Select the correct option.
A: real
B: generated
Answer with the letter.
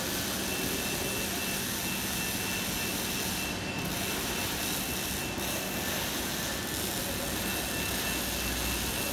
A